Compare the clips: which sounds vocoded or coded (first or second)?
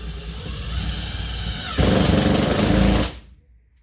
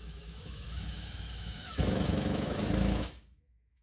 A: second